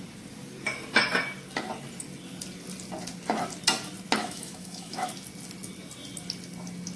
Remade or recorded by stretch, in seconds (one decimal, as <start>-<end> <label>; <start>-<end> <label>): 0.0-4.2 recorded; 4.2-5.1 remade; 5.1-7.0 recorded